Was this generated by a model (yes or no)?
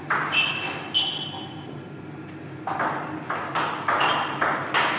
no